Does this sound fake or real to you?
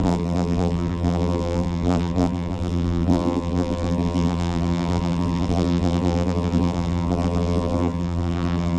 fake